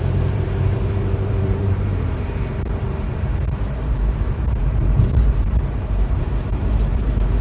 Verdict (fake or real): fake